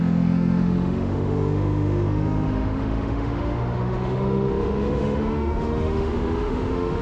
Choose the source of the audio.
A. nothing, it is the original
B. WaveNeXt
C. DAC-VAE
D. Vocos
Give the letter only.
C